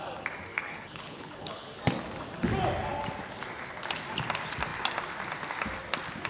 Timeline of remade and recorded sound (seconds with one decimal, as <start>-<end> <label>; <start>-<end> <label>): 0.0-0.5 recorded; 0.5-1.8 remade; 1.8-6.3 recorded

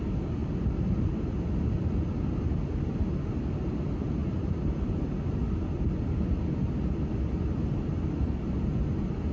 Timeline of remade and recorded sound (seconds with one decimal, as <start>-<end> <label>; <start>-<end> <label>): 0.0-9.3 recorded

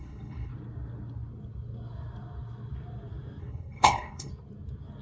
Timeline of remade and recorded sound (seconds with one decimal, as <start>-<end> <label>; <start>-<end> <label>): 0.0-0.5 remade; 0.5-3.4 recorded; 3.4-4.3 remade; 4.3-5.0 recorded

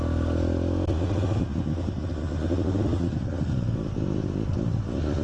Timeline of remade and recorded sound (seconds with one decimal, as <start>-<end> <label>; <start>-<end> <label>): 0.0-5.2 recorded

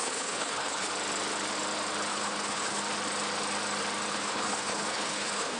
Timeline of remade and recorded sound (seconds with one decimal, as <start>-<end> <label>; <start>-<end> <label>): 0.0-0.9 remade; 0.9-2.1 recorded; 2.1-2.8 remade; 2.8-4.1 recorded; 4.1-5.6 remade

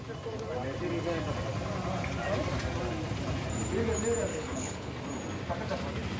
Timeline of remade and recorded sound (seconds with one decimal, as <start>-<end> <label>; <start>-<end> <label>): 0.0-4.3 recorded; 4.3-4.9 remade; 4.9-6.2 recorded

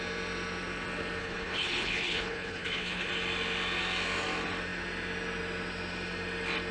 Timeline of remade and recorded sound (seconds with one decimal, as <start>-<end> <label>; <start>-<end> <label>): 0.0-1.2 recorded; 1.2-3.1 remade; 3.1-6.7 recorded

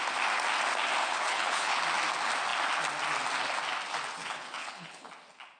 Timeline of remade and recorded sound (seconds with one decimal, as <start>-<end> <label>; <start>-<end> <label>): 0.0-1.0 recorded; 1.0-1.8 remade; 1.8-4.2 recorded; 4.2-5.1 remade; 5.1-5.6 recorded